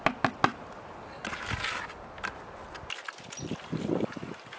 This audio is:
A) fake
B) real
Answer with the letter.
B